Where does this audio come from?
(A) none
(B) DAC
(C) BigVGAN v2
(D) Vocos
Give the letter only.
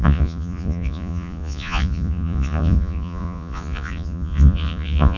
D